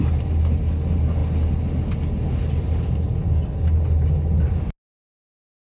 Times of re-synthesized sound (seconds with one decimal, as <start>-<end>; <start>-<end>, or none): none

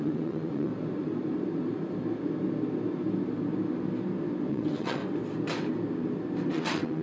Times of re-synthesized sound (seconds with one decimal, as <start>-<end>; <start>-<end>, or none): 0.0-0.7; 4.5-5.0; 6.5-7.0

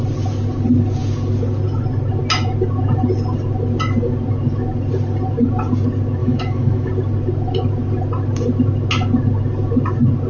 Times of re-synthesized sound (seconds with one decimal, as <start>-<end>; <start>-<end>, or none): 6.2-6.9

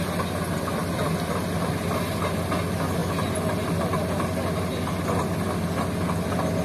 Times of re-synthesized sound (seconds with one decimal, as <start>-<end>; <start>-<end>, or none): none